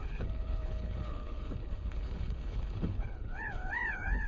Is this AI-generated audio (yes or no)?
yes